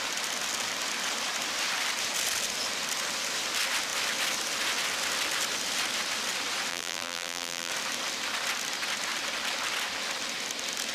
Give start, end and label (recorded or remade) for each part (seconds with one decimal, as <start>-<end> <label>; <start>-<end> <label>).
0.0-6.7 recorded; 6.7-7.7 remade; 7.7-10.9 recorded